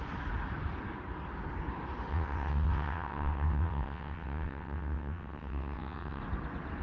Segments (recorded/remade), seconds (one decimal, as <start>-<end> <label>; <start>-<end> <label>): 0.0-2.1 recorded; 2.1-6.2 remade; 6.2-6.8 recorded